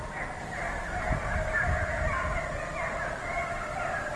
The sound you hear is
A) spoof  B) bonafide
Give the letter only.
B